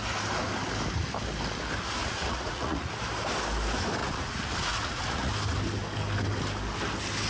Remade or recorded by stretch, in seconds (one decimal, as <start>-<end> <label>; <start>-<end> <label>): 0.0-2.0 recorded; 2.0-2.9 remade; 2.9-4.0 recorded; 4.0-5.3 remade; 5.3-7.3 recorded